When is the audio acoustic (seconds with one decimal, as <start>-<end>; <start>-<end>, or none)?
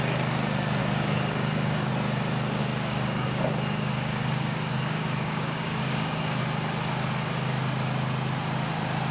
0.0-0.8; 1.9-2.6; 6.4-9.1